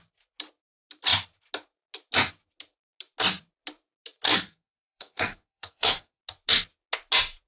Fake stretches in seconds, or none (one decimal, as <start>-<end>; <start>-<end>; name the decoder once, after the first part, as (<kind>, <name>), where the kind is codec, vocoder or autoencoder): 4.3-6.2 (codec, SNAC)